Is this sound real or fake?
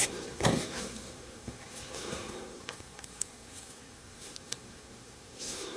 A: fake